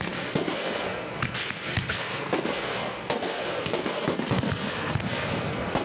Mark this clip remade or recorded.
remade